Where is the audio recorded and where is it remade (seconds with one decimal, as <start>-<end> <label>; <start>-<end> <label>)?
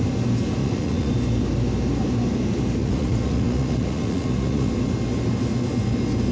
0.0-0.6 recorded; 0.6-1.1 remade; 1.1-2.8 recorded; 2.8-4.7 remade; 4.7-6.3 recorded